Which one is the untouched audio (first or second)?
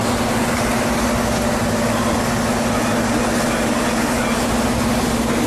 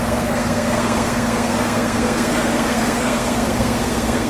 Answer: first